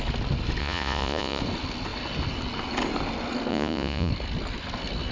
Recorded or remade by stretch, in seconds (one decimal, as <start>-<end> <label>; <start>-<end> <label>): 0.0-0.6 recorded; 0.6-1.4 remade; 1.4-3.5 recorded; 3.5-4.1 remade; 4.1-5.1 recorded